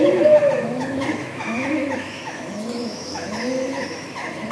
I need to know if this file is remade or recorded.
remade